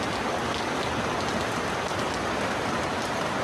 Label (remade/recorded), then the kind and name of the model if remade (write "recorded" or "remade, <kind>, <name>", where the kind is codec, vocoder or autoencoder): recorded